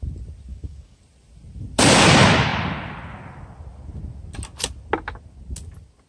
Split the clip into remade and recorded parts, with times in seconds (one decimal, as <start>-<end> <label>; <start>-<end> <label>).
0.0-0.5 recorded; 0.5-1.0 remade; 1.0-6.1 recorded